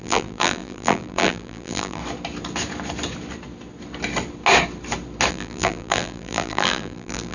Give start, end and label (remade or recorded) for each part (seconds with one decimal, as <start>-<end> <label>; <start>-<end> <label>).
0.0-2.0 remade; 2.0-5.3 recorded; 5.3-7.3 remade